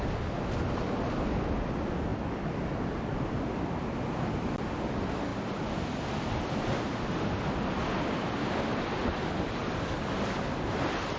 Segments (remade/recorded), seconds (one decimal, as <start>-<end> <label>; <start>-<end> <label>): 0.0-11.2 recorded